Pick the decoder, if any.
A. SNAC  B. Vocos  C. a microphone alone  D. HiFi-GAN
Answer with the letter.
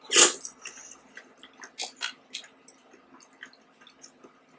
C